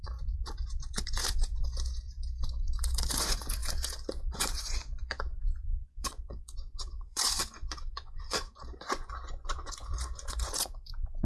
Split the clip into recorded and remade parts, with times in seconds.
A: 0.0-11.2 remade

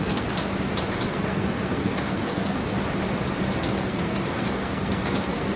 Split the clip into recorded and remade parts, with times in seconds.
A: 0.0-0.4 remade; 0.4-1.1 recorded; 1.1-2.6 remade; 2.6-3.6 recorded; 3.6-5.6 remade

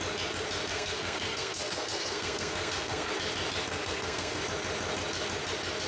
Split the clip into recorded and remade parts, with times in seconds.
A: 0.0-0.7 recorded; 0.7-3.1 remade; 3.1-3.7 recorded; 3.7-4.4 remade; 4.4-5.9 recorded